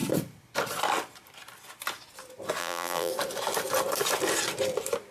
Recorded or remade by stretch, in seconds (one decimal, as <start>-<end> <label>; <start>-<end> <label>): 0.0-2.6 recorded; 2.6-3.1 remade; 3.1-5.1 recorded